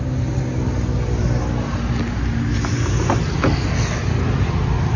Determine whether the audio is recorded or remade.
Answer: recorded